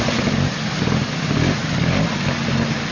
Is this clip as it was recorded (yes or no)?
yes